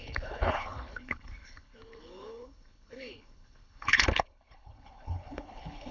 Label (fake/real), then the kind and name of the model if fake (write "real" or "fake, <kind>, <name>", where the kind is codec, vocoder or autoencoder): fake, codec, HILCodec